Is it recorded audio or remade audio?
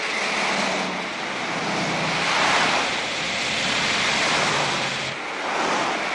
recorded